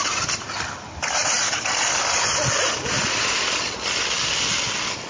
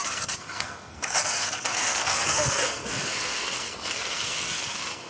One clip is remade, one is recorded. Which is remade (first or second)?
second